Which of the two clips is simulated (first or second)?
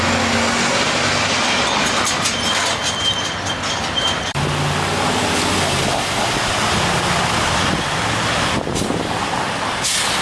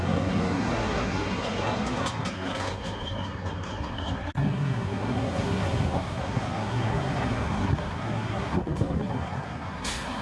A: second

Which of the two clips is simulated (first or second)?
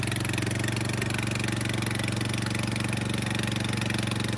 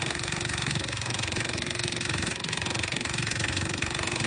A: second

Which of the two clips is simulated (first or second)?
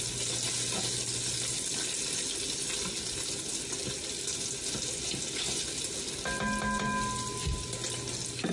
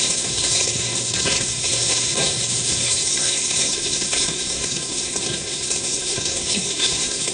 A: second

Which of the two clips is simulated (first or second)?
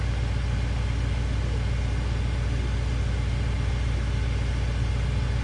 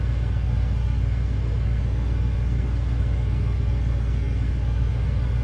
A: second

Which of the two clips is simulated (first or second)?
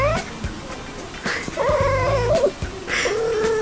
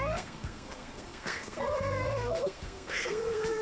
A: second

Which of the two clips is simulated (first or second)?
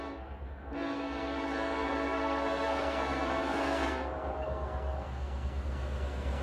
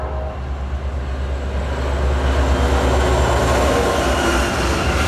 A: first